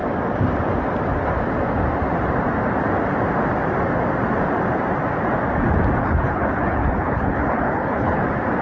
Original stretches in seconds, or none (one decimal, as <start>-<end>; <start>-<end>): 0.0-6.0; 8.2-8.6